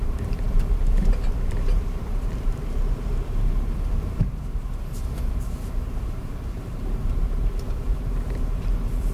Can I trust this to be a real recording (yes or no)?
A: no